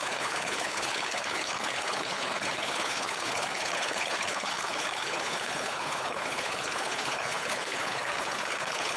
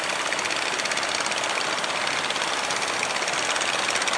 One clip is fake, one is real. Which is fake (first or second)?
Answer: first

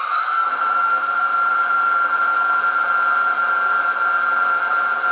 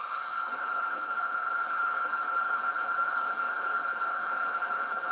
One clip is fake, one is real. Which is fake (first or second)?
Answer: second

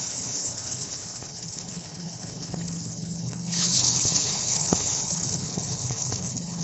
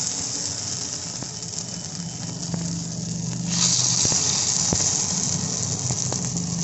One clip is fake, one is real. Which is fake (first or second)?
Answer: first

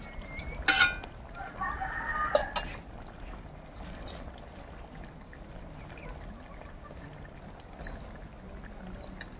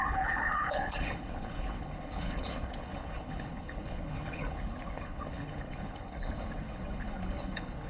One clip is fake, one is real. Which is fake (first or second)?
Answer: second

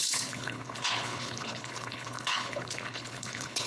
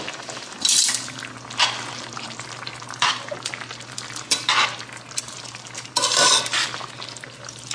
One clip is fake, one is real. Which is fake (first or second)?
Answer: first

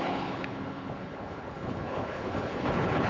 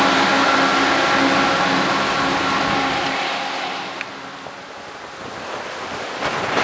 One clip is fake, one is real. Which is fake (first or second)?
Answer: first